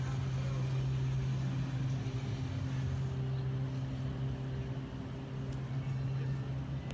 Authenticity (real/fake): real